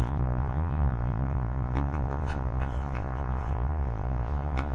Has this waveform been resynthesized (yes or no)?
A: yes